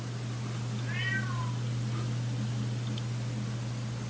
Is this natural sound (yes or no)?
yes